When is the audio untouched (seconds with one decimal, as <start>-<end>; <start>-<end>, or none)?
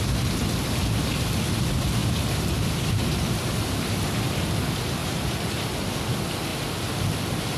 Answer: 0.0-2.0; 4.2-5.0; 5.6-7.6